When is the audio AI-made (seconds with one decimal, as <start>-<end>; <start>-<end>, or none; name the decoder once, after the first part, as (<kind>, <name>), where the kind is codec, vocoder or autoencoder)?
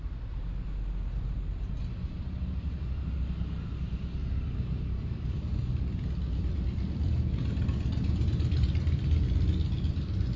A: 4.2-7.3 (vocoder, BigVGAN v2)